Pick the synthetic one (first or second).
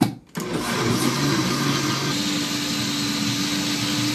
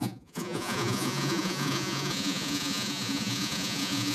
second